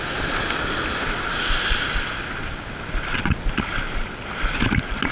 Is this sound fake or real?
real